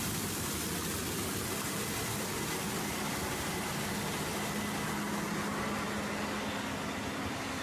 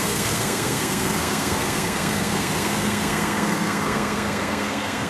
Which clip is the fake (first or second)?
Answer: second